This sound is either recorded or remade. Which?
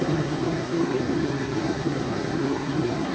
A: remade